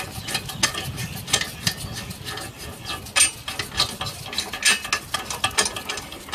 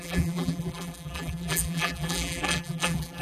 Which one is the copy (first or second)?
second